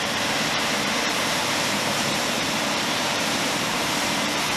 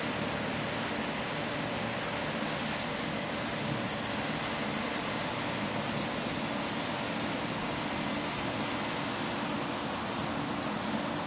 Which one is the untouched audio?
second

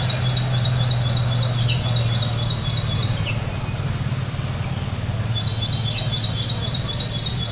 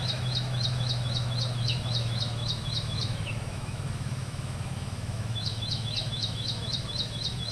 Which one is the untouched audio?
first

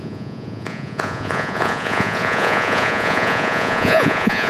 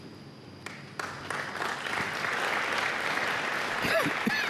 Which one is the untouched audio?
second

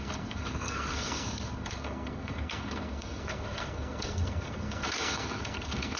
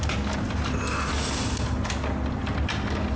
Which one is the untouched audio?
second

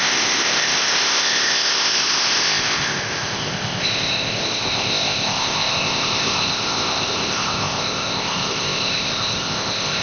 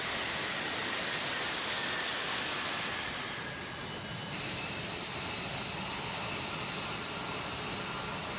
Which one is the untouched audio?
second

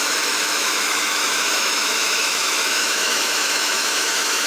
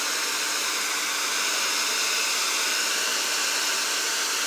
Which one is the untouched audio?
second